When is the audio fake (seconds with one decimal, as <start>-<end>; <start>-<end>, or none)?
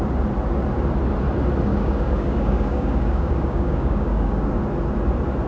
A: 1.7-4.5